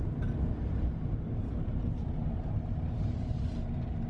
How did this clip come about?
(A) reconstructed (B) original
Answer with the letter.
B